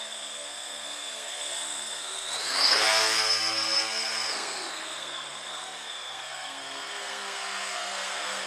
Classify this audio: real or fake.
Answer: fake